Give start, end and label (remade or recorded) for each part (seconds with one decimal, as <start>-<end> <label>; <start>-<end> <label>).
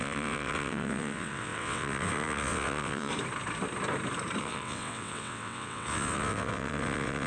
0.0-3.1 remade; 3.1-4.4 recorded; 4.4-7.3 remade